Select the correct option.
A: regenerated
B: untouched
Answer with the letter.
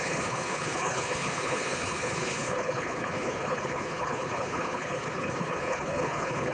A